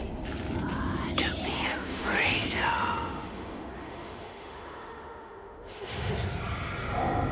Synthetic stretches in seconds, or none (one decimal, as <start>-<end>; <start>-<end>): 1.7-6.1